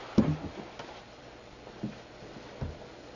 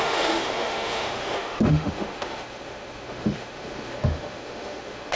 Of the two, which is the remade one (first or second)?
second